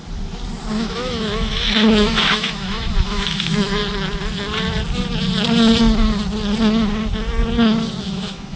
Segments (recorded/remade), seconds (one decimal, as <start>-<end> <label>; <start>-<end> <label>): 0.0-0.7 recorded; 0.7-3.8 remade; 3.8-8.0 recorded; 8.0-8.6 remade

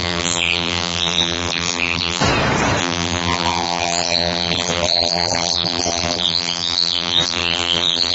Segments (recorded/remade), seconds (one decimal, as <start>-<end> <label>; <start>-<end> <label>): 0.0-2.2 remade; 2.2-2.8 recorded; 2.8-8.1 remade